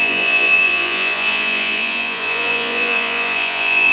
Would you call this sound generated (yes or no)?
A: yes